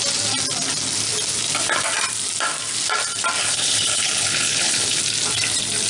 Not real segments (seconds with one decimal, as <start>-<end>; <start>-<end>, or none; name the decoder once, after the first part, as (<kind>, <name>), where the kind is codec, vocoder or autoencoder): 3.4-5.0 (codec, HILCodec)